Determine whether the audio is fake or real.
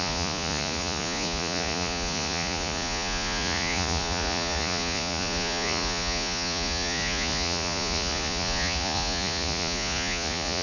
fake